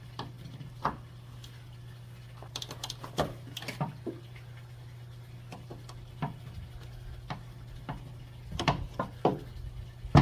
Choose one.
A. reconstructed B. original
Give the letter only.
B